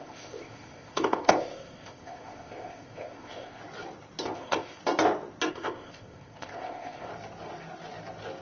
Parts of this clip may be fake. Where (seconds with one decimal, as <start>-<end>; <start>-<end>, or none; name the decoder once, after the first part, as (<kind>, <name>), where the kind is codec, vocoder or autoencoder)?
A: 0.0-3.6 (codec, ZipCodec); 4.2-4.8; 5.5-7.1